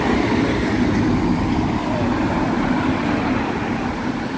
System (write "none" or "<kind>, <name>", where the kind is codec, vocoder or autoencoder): none